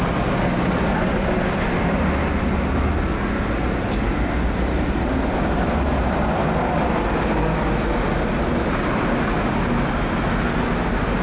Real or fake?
real